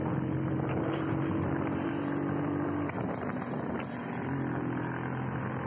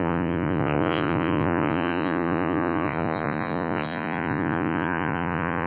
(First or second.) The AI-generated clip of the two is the second